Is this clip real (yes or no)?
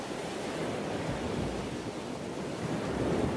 yes